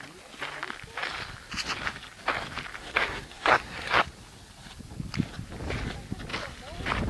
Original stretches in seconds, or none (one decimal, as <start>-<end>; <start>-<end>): 0.0-2.8; 4.0-7.1